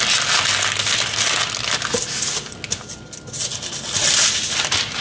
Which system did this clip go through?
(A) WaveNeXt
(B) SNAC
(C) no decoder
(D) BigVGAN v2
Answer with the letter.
C